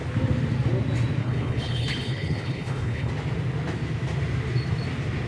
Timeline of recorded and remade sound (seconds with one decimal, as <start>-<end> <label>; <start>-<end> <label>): 0.0-1.2 recorded; 1.2-3.1 remade; 3.1-5.3 recorded